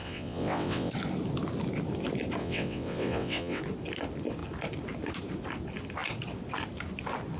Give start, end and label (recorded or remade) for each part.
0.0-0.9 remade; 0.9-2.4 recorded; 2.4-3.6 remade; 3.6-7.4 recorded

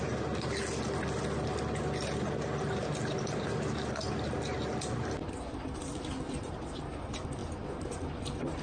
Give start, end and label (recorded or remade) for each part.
0.0-7.4 recorded; 7.4-8.1 remade; 8.1-8.6 recorded

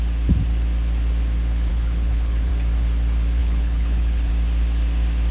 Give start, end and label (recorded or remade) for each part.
0.0-1.7 recorded; 1.7-2.5 remade; 2.5-3.4 recorded; 3.4-4.3 remade; 4.3-5.3 recorded